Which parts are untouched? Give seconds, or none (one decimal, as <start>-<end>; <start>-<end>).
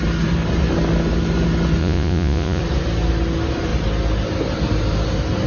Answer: 0.0-1.8; 2.6-5.5